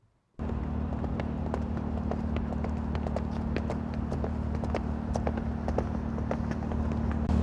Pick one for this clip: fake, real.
real